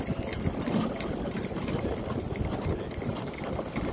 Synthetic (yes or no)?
no